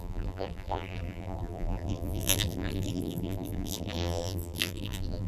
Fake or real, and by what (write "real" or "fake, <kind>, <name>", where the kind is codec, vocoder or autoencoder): fake, vocoder, BigVGAN v2